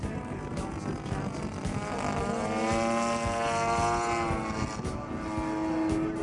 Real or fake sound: real